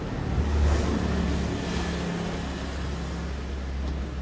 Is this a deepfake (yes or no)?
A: no